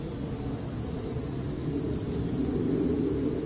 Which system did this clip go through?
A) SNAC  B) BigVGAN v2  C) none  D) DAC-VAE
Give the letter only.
C